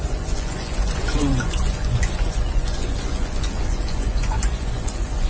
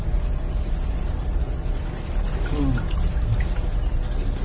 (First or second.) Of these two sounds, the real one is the second